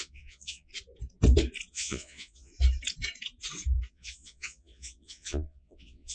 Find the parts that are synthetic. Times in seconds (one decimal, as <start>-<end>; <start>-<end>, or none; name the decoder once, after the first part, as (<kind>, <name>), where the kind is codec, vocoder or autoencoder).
0.0-0.7 (vocoder, Vocos); 1.7-2.5; 3.9-6.1